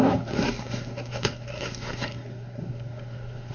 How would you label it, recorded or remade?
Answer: remade